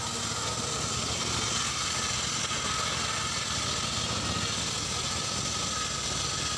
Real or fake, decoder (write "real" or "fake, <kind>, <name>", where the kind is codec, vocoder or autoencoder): real